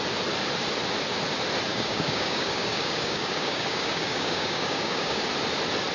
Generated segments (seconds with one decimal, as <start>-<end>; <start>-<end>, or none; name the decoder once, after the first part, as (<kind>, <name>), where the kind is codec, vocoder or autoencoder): 1.7-5.2 (codec, DAC)